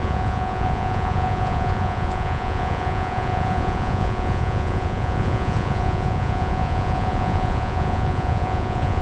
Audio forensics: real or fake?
fake